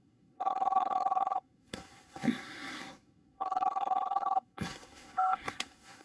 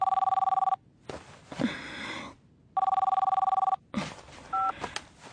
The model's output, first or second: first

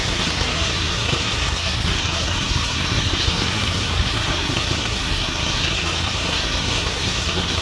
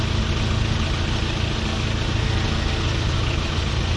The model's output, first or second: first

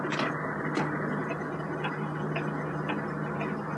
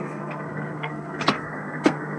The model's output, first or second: second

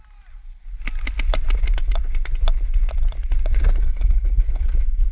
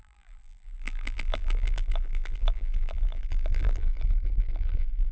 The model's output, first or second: second